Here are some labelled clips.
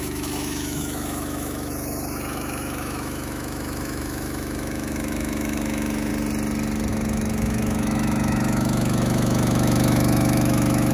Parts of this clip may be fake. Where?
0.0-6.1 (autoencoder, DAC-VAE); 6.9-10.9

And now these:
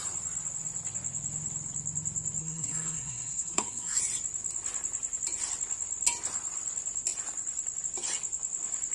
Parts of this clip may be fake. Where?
2.4-4.0 (codec, SNAC)